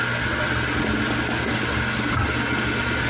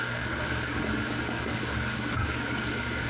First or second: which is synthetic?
second